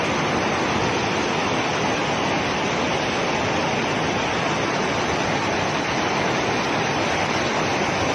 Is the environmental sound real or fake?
real